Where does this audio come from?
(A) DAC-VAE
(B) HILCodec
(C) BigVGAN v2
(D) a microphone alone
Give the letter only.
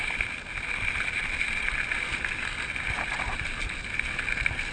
D